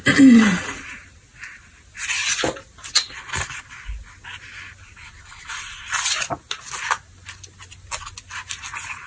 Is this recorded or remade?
recorded